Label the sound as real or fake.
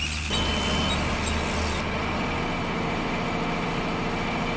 real